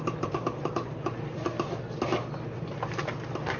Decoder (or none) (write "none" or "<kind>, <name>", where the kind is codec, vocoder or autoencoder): none